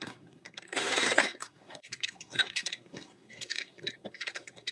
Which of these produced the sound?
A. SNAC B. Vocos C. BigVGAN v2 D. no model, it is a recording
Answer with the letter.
A